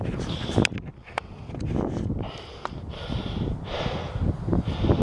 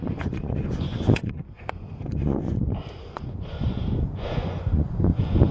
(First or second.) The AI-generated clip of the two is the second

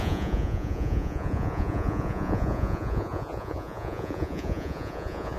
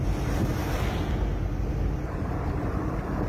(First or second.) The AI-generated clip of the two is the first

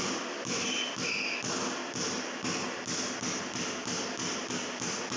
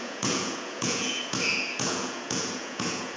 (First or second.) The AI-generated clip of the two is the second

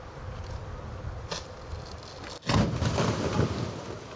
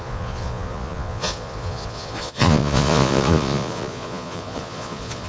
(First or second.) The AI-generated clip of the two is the second